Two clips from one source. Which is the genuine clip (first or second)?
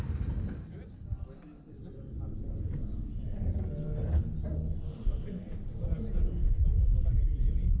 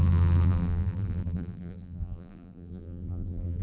first